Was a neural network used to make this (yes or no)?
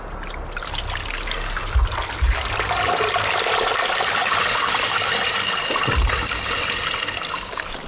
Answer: no